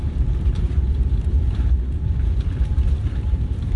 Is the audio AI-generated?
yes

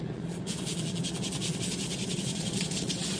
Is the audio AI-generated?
yes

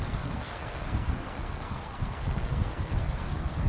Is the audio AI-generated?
yes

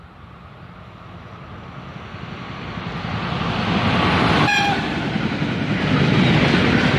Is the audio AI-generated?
no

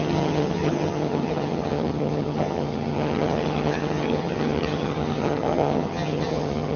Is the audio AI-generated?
yes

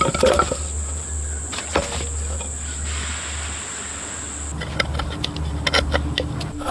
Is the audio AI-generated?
no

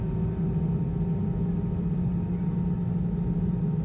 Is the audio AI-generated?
no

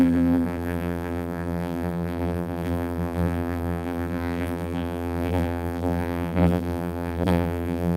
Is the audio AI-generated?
yes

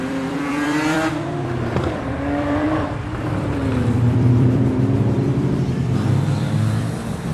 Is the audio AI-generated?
yes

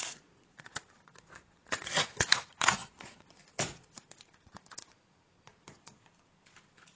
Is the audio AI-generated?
yes